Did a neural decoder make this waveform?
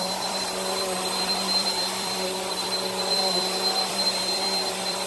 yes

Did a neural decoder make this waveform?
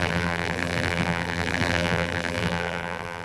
yes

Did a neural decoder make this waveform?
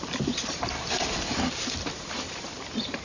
yes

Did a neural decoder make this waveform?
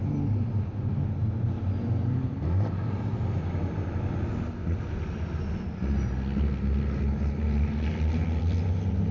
no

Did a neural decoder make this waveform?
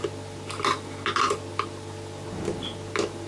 no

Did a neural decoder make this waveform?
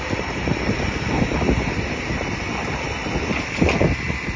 yes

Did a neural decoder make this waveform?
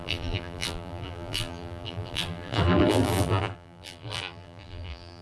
yes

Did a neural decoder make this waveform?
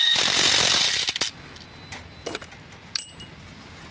no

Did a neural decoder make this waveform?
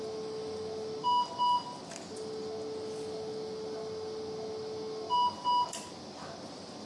no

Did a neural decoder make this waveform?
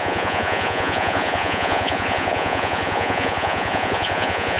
yes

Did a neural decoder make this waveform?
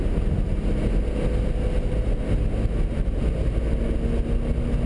no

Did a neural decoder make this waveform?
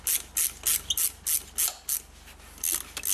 no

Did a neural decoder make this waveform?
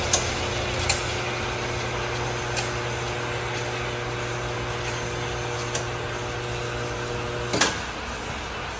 no